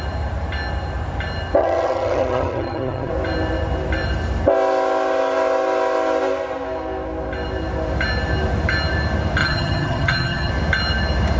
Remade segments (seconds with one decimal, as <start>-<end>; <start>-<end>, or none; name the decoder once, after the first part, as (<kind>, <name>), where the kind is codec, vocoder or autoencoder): 1.6-3.1 (vocoder, HiFi-GAN); 9.4-10.5